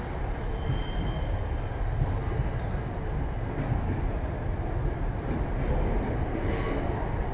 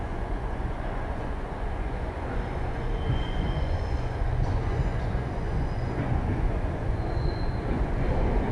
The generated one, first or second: second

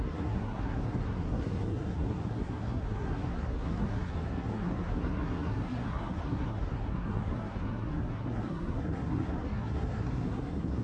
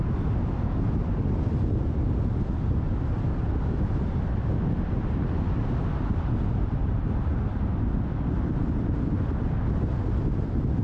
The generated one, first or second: first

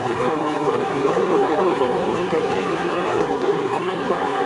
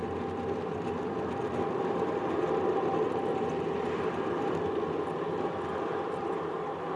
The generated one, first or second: first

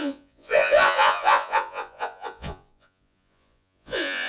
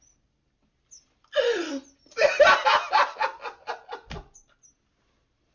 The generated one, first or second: first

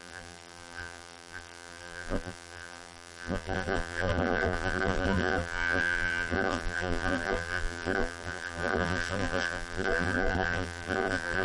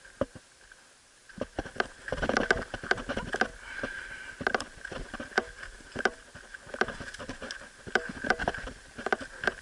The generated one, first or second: first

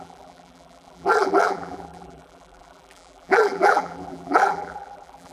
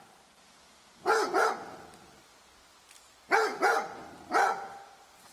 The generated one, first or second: first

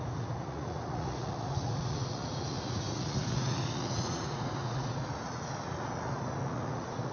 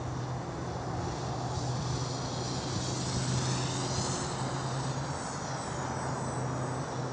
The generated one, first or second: first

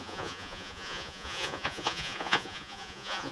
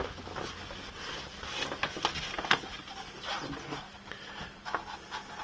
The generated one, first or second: first